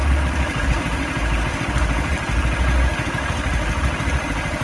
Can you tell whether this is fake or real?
real